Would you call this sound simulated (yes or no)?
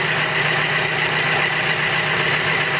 no